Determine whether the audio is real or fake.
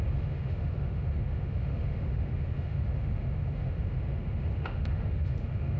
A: fake